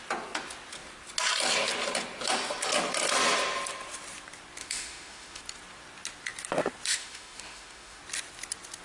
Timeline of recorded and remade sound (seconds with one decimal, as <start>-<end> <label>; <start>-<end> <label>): 0.0-4.6 recorded; 4.6-5.4 remade; 5.4-6.9 recorded; 6.9-8.0 remade; 8.0-8.8 recorded